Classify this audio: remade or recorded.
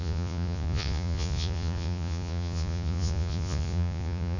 remade